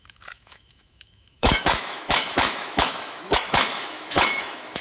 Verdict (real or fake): fake